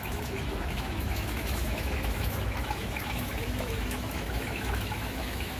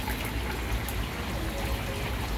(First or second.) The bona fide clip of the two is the second